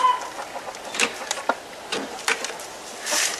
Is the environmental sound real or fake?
real